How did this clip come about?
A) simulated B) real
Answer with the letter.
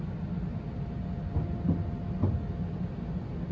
B